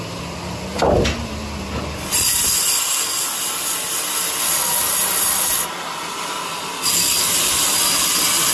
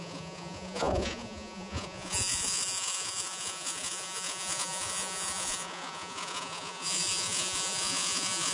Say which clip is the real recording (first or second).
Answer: first